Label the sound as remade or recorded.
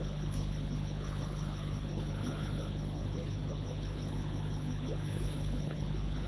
remade